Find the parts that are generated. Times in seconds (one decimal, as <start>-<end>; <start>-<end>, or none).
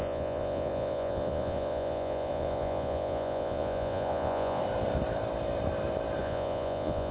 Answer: 0.0-4.6; 6.2-7.1